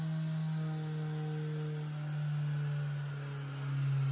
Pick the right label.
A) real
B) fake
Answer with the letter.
A